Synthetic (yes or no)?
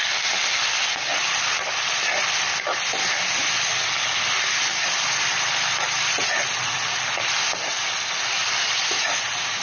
no